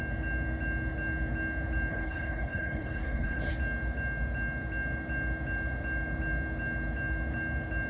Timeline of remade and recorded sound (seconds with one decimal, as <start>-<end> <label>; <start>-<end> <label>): 0.0-1.9 recorded; 1.9-3.5 remade; 3.5-7.9 recorded